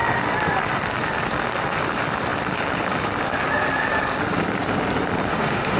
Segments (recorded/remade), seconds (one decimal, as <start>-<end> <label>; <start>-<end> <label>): 0.0-5.3 recorded; 5.3-5.8 remade